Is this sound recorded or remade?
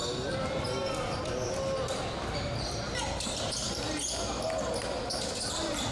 recorded